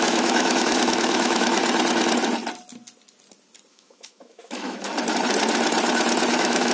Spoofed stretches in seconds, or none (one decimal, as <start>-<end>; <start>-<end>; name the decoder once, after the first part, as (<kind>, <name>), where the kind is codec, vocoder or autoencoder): 0.0-1.6 (autoencoder, DAC-VAE); 3.7-4.9; 6.3-6.7

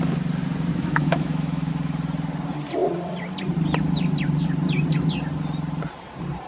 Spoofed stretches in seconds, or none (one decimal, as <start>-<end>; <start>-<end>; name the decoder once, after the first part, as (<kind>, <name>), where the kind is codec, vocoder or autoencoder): 0.7-1.7 (autoencoder, DAC-VAE)

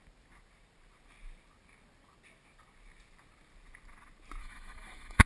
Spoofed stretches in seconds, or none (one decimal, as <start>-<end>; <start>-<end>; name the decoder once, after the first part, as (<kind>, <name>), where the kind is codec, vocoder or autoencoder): 4.4-5.3 (autoencoder, DAC-VAE)

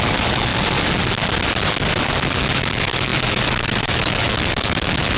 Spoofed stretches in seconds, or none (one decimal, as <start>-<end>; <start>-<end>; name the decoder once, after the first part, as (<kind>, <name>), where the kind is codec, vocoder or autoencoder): 0.0-0.5 (autoencoder, DAC-VAE); 2.4-5.2

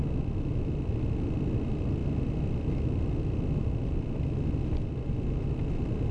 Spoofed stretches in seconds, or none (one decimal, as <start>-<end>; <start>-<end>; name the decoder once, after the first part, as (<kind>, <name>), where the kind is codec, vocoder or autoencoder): none

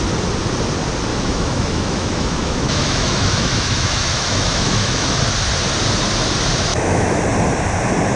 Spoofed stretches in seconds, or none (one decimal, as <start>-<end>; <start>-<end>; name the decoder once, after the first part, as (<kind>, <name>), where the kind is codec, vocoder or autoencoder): 1.1-5.2 (autoencoder, DAC-VAE); 6.7-7.2

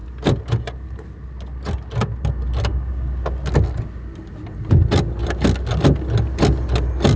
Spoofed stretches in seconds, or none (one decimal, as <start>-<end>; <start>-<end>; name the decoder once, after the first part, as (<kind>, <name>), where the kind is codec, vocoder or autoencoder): none

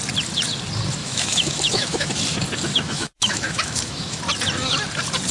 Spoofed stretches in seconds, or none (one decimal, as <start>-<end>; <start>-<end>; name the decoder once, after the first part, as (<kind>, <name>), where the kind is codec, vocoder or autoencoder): 1.0-2.1 (autoencoder, DAC-VAE); 2.7-4.2